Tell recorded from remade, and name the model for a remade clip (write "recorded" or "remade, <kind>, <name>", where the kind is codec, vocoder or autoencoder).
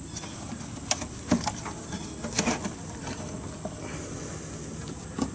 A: recorded